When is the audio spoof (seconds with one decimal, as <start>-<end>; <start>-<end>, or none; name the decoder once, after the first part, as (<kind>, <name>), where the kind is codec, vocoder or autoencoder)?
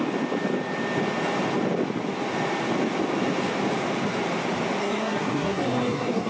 4.8-6.3 (codec, SNAC)